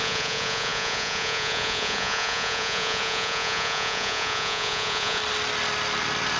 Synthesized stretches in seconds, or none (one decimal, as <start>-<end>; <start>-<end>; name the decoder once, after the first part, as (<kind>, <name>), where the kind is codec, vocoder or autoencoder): 0.0-5.2 (vocoder, Vocos)